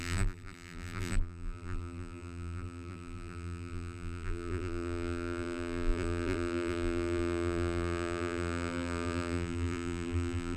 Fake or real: fake